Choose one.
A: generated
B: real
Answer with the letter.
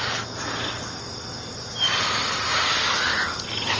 B